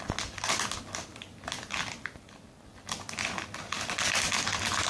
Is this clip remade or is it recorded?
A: recorded